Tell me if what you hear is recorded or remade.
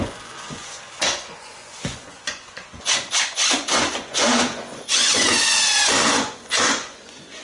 remade